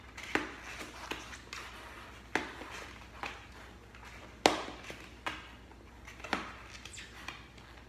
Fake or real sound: real